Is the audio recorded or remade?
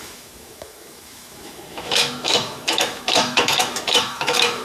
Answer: remade